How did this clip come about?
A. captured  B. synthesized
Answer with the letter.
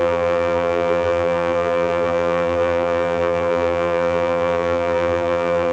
B